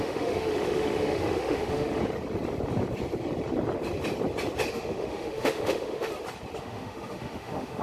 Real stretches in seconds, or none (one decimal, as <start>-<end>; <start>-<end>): 2.0-4.7; 6.1-6.6